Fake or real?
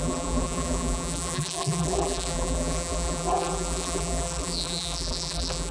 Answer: fake